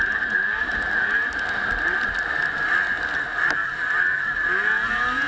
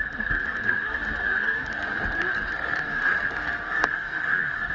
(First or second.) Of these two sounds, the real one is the first